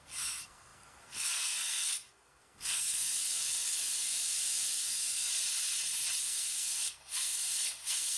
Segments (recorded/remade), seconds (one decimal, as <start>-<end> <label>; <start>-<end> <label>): 0.0-5.3 remade; 5.3-6.2 recorded; 6.2-8.2 remade